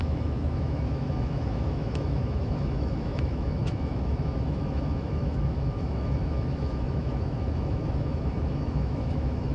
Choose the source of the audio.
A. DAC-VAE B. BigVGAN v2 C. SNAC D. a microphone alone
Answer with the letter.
A